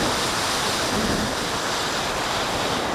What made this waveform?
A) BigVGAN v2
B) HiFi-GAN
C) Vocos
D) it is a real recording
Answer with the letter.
D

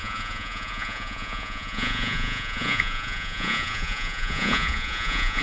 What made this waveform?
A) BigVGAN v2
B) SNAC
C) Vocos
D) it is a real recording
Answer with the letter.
C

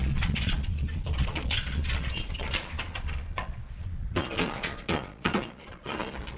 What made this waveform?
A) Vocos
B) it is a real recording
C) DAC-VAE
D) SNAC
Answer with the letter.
A